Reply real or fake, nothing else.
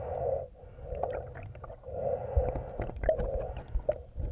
real